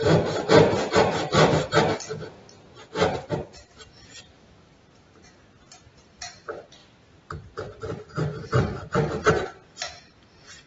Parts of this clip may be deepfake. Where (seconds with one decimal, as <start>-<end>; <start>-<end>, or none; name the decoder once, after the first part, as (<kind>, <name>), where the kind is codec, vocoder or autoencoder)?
6.8-9.3 (vocoder, BigVGAN v2)